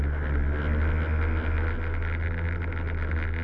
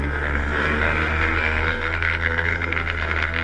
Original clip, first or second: first